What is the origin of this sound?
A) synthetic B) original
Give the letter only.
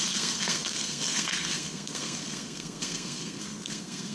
A